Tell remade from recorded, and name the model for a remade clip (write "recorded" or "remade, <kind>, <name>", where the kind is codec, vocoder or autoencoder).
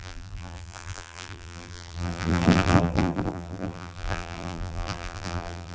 remade, vocoder, BigVGAN v2